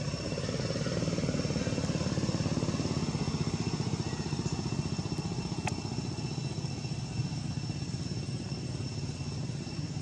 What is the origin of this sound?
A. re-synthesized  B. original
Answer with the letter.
B